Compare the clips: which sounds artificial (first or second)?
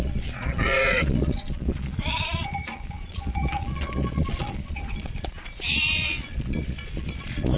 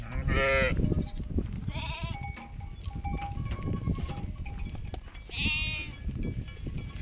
first